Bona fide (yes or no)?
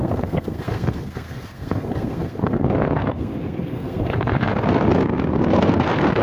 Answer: no